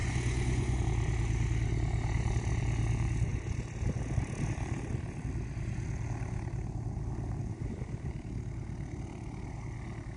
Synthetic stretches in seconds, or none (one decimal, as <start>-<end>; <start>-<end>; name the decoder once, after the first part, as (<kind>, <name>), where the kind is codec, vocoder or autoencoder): 0.0-0.8 (vocoder, Vocos)